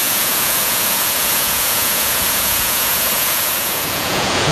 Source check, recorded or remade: remade